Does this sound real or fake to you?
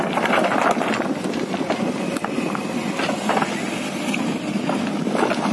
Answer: real